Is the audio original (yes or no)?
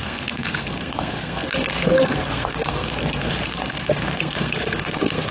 no